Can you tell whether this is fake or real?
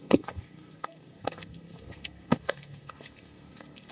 fake